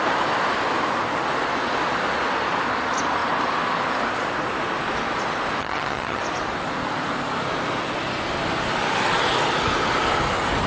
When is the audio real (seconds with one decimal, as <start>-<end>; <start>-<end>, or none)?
0.0-5.6; 6.2-10.7